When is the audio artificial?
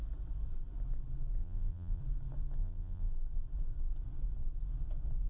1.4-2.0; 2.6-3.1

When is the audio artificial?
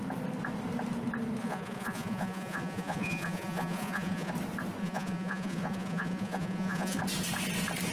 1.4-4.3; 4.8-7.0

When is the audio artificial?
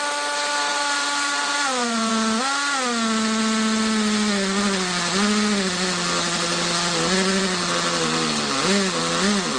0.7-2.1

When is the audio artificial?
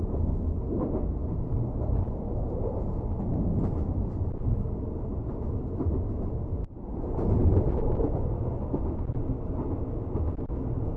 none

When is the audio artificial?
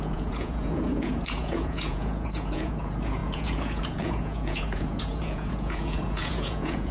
0.0-6.9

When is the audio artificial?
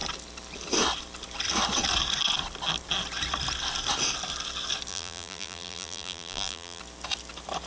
4.9-6.8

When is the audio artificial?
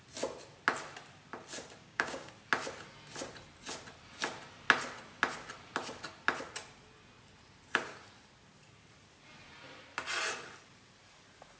1.8-2.3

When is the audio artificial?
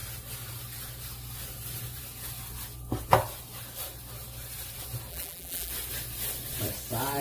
5.1-5.7